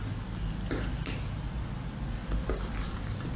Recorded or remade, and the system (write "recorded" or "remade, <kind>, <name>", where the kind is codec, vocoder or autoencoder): recorded